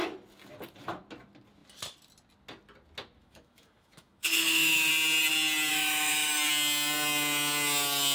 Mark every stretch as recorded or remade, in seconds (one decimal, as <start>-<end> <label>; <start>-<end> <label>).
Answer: 0.0-3.2 recorded; 3.2-4.9 remade; 4.9-5.7 recorded; 5.7-6.5 remade; 6.5-8.1 recorded